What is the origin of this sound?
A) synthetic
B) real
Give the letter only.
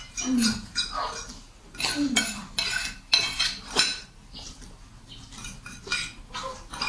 B